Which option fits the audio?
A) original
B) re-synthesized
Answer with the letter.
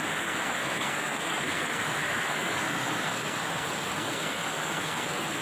B